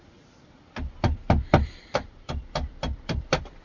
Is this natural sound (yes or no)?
no